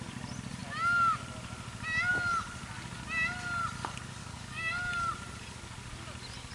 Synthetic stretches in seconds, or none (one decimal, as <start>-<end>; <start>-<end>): 4.2-4.7